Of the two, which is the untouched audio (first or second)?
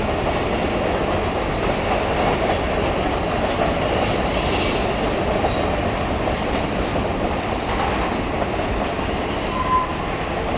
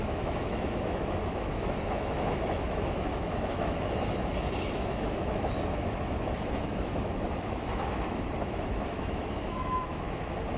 first